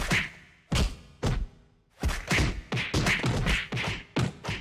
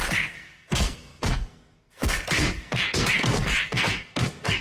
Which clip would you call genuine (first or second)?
first